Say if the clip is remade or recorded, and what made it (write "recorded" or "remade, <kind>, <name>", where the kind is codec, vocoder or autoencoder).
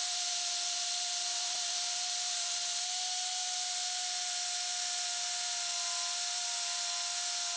recorded